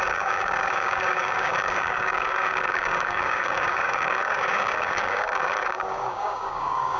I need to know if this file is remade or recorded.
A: remade